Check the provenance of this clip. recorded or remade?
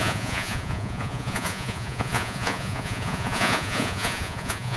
remade